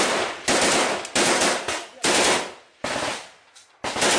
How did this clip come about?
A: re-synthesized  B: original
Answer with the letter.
B